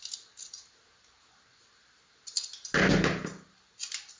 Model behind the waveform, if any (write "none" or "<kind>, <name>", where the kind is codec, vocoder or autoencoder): none